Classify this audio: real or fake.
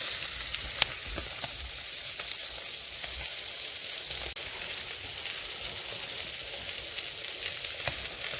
real